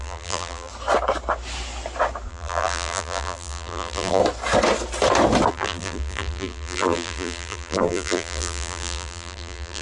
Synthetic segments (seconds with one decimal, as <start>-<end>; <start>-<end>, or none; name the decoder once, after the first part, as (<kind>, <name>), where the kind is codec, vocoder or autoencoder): 0.0-0.7 (vocoder, BigVGAN v2); 2.3-4.2; 5.5-9.8